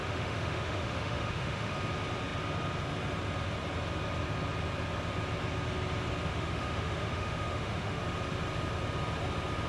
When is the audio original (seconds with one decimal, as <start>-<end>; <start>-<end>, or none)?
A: 1.7-6.3; 8.0-9.7